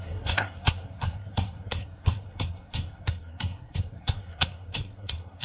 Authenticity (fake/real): fake